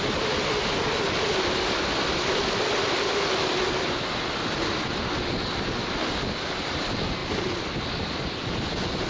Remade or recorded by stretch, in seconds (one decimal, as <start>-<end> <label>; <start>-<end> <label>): 0.0-9.1 recorded